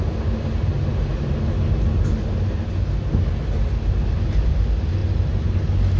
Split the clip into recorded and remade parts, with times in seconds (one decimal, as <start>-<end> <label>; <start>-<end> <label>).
0.0-6.0 recorded